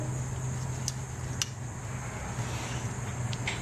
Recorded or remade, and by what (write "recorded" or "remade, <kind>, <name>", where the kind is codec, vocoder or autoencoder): recorded